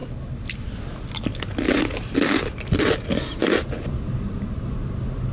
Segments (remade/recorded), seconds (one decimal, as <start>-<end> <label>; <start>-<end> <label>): 0.0-5.3 recorded